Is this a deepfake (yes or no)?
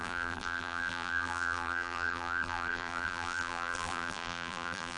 yes